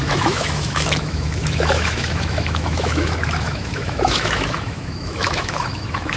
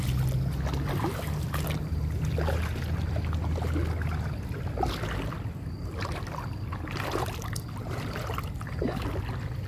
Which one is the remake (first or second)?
first